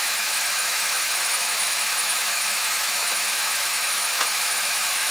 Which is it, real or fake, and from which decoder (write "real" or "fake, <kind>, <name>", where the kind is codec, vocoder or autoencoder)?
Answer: fake, autoencoder, DAC-VAE